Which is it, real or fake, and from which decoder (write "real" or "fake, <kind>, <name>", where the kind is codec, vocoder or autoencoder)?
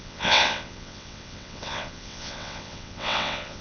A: fake, vocoder, WaveNeXt